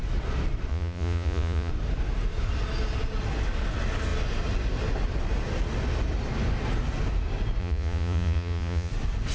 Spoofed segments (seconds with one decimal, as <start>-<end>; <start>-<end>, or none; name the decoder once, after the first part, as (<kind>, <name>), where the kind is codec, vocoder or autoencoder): 0.7-1.7 (vocoder, Vocos); 7.6-8.9